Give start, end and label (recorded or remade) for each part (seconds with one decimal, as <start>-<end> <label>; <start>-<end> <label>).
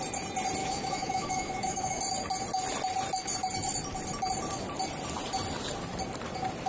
0.0-0.6 recorded; 0.6-2.0 remade; 2.0-6.7 recorded